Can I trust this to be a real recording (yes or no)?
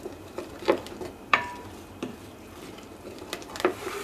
no